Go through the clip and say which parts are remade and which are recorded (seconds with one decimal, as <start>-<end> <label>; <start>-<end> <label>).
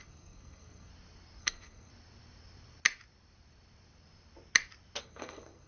0.0-0.9 remade; 0.9-1.4 recorded; 1.4-1.9 remade; 1.9-5.0 recorded; 5.0-5.7 remade